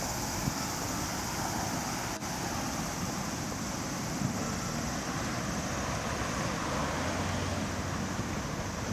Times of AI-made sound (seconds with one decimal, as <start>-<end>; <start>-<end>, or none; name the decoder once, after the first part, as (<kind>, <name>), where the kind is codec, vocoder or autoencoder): 2.9-3.7 (vocoder, BigVGAN v2)